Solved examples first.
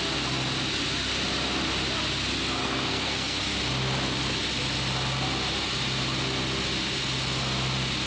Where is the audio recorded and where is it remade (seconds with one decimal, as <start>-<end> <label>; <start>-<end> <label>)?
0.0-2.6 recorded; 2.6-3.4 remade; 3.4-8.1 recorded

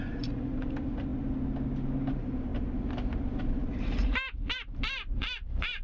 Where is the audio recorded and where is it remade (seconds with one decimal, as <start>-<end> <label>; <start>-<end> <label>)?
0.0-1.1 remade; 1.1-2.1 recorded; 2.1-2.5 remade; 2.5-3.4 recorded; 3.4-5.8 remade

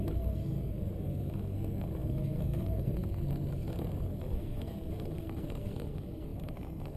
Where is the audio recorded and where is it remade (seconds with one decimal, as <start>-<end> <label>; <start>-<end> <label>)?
0.0-7.0 remade